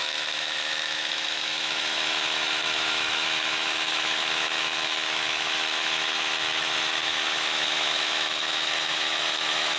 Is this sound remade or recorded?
remade